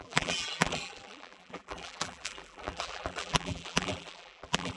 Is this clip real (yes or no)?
no